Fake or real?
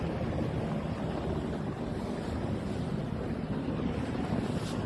real